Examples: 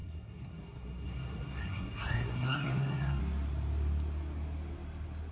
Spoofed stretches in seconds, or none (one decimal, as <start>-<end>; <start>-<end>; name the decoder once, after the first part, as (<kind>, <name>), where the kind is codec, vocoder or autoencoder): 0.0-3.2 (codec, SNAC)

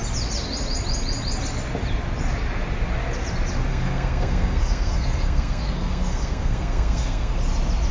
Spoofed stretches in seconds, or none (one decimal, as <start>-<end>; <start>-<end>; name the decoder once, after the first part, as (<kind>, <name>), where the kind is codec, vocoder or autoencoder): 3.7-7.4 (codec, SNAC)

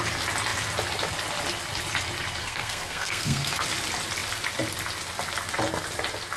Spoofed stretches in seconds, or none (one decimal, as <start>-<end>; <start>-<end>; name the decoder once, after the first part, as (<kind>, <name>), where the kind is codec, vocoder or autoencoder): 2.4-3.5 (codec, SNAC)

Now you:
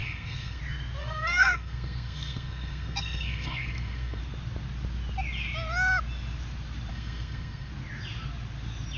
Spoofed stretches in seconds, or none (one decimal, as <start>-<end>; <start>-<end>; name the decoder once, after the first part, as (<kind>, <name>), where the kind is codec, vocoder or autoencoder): 0.0-0.6 (codec, SNAC); 1.0-4.2; 6.9-7.7

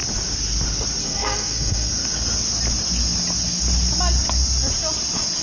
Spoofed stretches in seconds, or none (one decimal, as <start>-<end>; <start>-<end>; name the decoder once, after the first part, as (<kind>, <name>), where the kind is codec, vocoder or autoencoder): 1.0-1.9 (codec, SNAC)

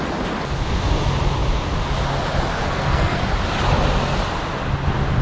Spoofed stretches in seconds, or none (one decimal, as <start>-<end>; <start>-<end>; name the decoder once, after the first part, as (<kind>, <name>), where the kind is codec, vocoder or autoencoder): 2.5-3.2 (codec, SNAC)

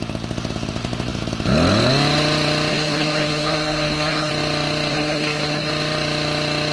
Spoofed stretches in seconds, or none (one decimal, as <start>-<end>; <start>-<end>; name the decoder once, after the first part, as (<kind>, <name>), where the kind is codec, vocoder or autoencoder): 2.7-4.3 (codec, SNAC); 4.9-5.7

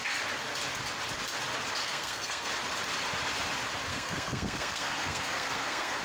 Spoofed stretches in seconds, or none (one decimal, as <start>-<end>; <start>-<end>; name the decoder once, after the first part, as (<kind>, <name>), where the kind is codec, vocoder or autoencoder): 1.8-2.5 (codec, SNAC); 3.9-6.0